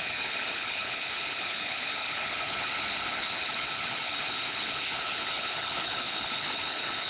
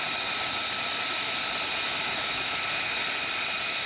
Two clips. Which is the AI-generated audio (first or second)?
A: first